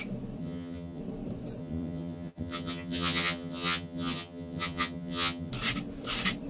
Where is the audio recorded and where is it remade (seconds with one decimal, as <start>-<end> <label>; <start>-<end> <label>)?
0.0-0.4 recorded; 0.4-1.0 remade; 1.0-1.6 recorded; 1.6-5.5 remade; 5.5-6.5 recorded